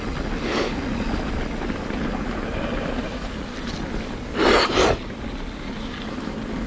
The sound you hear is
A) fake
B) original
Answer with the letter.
B